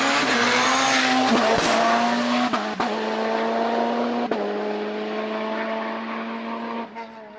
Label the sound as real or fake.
real